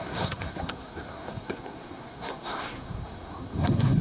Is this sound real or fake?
fake